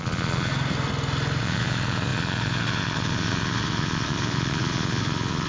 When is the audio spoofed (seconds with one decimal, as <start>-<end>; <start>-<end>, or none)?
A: 0.0-0.5; 1.4-5.5